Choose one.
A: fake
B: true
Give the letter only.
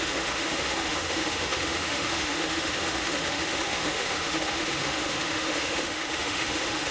A